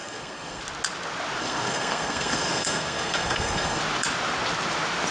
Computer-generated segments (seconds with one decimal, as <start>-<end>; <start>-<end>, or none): 0.0-0.6; 1.4-3.8